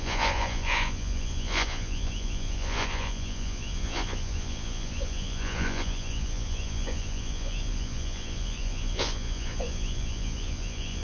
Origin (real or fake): fake